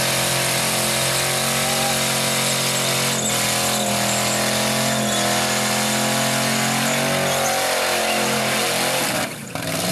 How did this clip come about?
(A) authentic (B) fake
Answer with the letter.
A